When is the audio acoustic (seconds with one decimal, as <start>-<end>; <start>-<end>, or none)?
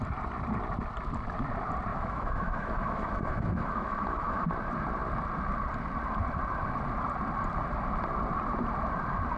0.0-1.9; 4.5-9.4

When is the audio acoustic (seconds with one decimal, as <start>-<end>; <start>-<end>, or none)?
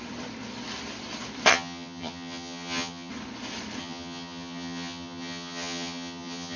0.0-1.5; 3.1-3.8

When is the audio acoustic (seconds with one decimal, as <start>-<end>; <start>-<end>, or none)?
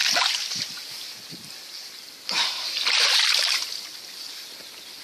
0.0-5.0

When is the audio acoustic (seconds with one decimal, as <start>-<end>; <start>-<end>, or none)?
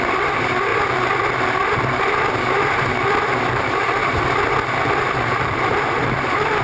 0.7-3.4; 4.0-5.0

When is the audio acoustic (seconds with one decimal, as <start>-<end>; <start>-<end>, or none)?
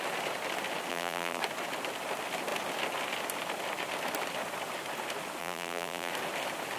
0.0-0.9; 1.4-5.4; 6.1-6.8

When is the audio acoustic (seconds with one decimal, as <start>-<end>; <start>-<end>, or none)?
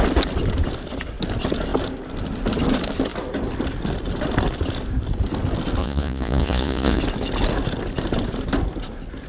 0.0-5.8; 7.0-9.3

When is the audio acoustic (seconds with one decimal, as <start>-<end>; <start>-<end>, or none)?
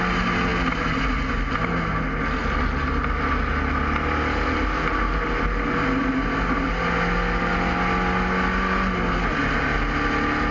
0.0-10.5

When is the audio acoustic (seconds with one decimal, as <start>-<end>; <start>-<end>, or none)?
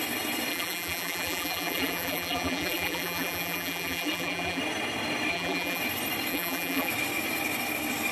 0.0-0.5; 4.6-5.3; 5.8-6.3; 6.9-8.1